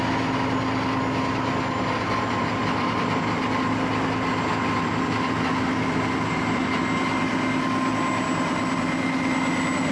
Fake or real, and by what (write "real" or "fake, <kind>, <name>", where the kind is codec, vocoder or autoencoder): real